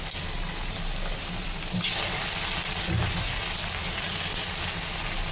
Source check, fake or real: real